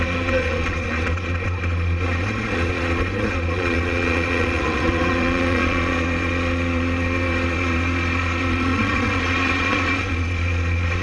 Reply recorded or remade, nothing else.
remade